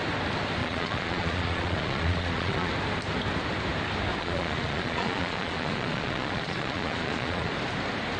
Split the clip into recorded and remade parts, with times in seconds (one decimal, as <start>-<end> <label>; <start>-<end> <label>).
0.0-0.6 recorded; 0.6-2.7 remade; 2.7-4.2 recorded; 4.2-7.5 remade; 7.5-8.2 recorded